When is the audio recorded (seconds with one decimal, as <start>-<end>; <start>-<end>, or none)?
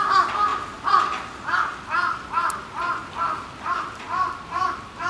0.0-5.1